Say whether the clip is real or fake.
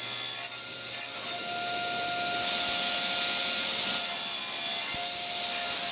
real